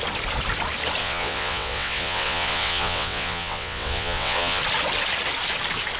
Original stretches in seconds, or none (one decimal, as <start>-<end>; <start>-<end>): 0.0-1.0; 4.6-6.0